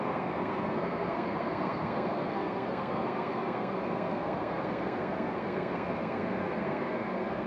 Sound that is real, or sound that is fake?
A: fake